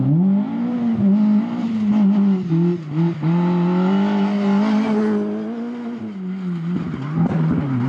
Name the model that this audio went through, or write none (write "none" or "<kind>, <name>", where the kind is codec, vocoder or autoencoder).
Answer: none